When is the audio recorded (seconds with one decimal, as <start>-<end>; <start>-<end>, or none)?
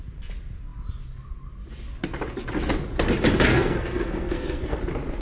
0.0-3.5; 4.8-5.2